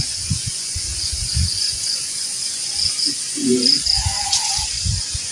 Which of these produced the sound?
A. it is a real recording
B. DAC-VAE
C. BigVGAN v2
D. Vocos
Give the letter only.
D